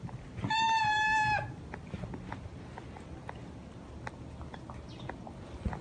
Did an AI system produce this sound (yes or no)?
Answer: no